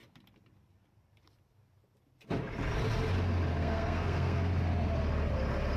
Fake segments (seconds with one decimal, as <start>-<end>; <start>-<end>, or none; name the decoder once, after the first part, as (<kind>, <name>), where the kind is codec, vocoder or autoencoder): 3.6-4.5 (codec, SNAC)